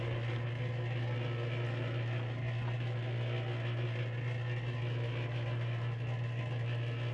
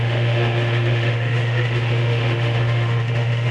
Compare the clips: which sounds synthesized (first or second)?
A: second